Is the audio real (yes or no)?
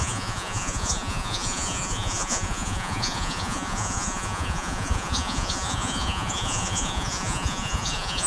no